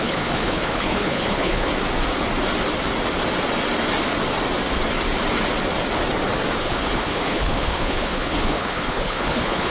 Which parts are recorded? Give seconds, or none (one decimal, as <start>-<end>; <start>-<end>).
1.7-6.6